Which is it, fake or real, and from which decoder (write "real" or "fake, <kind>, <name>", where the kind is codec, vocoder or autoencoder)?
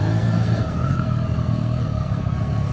fake, codec, SNAC